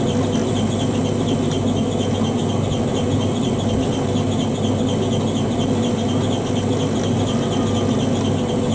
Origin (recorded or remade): recorded